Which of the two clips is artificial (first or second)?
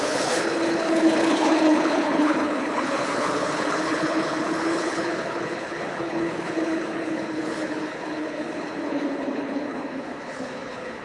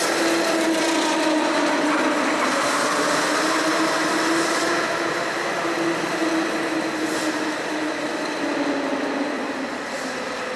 first